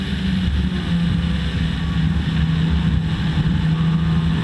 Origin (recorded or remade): recorded